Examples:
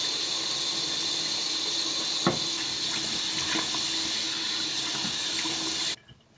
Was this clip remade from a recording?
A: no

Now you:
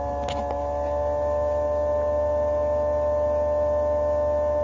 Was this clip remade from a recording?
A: no